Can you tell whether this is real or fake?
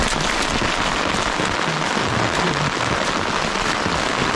real